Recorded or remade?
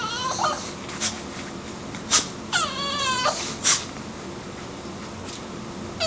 recorded